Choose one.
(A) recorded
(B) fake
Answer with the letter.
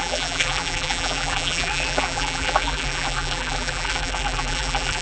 B